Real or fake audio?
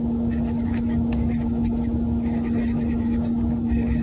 fake